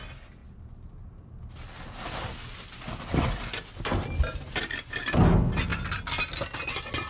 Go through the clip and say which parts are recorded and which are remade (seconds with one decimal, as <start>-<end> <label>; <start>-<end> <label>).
0.0-7.1 recorded